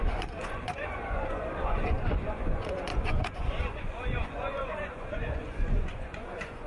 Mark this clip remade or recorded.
remade